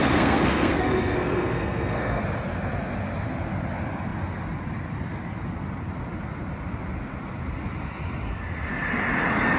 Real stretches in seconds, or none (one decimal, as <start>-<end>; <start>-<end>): 2.2-9.6